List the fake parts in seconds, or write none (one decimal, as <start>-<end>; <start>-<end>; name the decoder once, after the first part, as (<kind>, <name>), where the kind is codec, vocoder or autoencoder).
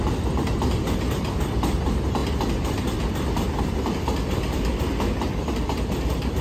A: none